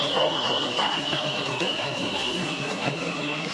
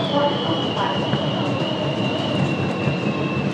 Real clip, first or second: second